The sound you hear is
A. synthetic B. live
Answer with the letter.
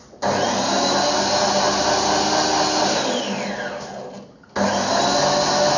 B